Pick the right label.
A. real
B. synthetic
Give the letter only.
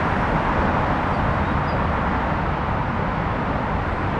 A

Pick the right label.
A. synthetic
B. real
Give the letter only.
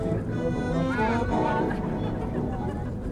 A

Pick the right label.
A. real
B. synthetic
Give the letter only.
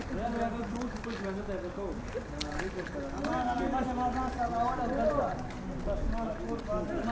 A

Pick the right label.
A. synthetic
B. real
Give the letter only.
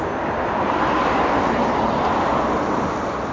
B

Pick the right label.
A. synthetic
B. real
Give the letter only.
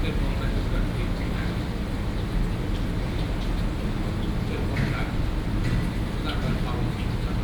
B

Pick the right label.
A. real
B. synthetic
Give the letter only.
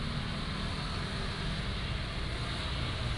A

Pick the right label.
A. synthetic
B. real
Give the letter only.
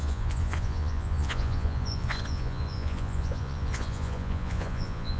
A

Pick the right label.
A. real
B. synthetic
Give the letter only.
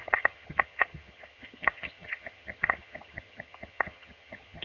B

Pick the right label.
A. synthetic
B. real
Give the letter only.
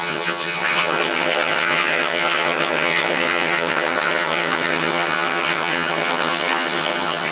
A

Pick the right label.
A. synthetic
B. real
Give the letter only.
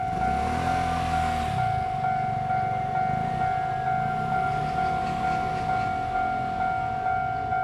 B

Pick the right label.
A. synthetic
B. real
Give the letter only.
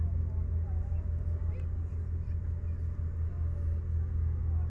B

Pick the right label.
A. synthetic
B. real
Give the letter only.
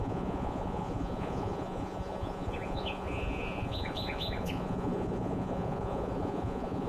A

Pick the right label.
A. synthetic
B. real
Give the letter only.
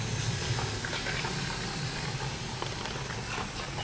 B